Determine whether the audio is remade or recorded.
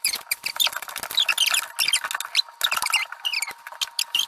recorded